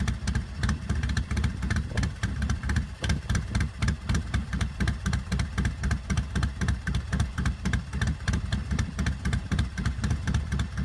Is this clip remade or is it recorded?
remade